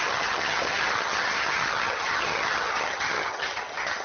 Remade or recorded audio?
remade